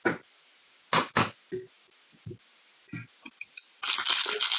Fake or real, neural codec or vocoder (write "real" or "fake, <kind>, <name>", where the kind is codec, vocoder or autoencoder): real